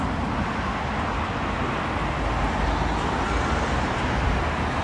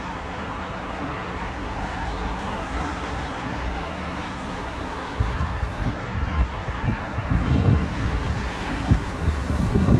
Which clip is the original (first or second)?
first